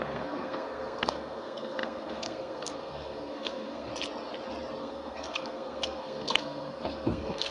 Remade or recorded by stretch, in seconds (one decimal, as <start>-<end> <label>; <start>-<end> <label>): 0.0-3.9 remade; 3.9-4.8 recorded; 4.8-7.5 remade